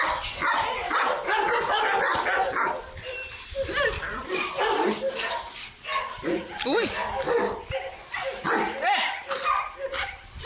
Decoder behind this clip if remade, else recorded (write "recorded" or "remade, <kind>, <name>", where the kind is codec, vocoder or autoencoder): recorded